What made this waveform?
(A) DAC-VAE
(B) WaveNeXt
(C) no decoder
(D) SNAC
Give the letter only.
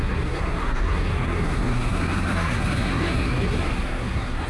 D